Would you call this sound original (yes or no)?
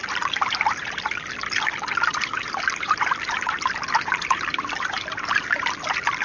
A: yes